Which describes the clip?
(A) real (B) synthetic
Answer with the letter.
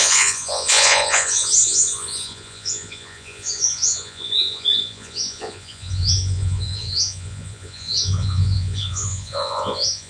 B